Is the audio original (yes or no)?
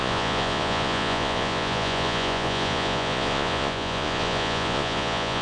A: no